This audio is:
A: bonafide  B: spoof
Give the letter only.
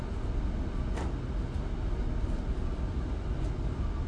A